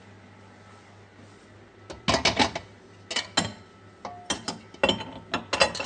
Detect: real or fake real